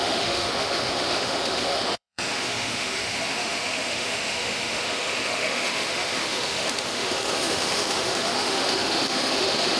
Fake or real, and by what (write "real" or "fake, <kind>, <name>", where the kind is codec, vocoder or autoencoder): fake, autoencoder, DAC-VAE